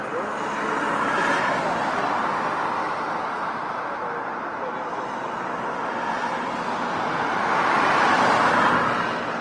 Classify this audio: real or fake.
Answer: real